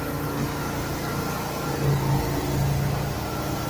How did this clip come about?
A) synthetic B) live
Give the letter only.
B